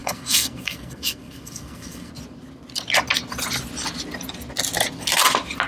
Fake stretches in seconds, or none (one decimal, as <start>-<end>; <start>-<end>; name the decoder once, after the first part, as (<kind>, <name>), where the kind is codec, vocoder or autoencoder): 0.0-2.1 (codec, SNAC)